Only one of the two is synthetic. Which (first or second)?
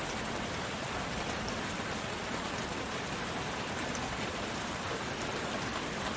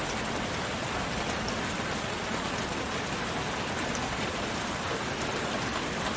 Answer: first